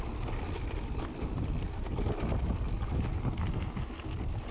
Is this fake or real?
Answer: real